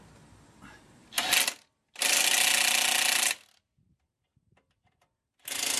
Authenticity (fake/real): real